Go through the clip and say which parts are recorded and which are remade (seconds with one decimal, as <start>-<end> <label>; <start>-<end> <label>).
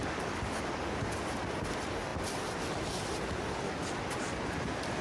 0.0-1.0 remade; 1.0-5.0 recorded